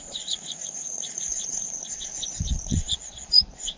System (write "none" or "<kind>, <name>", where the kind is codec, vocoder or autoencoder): vocoder, Vocos